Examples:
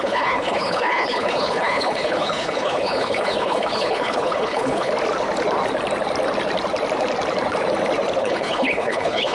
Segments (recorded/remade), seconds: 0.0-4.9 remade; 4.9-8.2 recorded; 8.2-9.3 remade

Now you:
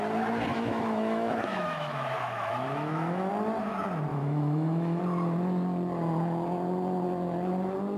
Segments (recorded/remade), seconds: 0.0-0.5 recorded; 0.5-3.3 remade; 3.3-4.1 recorded; 4.1-5.0 remade; 5.0-8.0 recorded

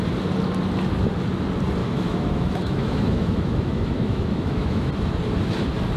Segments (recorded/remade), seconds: 0.0-1.8 recorded; 1.8-4.9 remade; 4.9-6.0 recorded

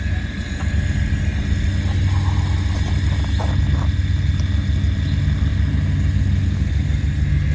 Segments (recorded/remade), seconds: 0.0-7.5 recorded